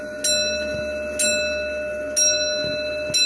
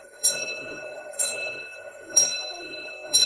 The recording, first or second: first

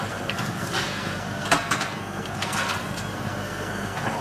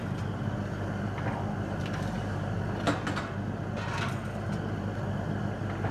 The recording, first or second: second